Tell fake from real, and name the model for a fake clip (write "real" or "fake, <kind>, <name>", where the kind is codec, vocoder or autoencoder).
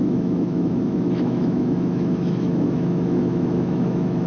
fake, autoencoder, DAC-VAE